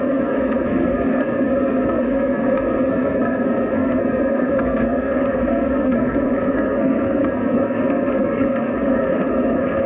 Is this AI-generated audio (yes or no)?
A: yes